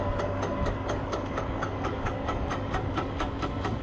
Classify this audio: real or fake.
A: fake